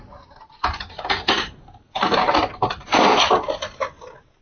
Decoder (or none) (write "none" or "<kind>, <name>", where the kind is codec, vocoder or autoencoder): none